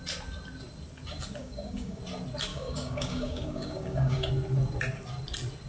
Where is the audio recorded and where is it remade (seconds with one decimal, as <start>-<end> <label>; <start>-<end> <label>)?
0.0-1.4 recorded; 1.4-2.0 remade; 2.0-2.5 recorded; 2.5-4.3 remade; 4.3-5.7 recorded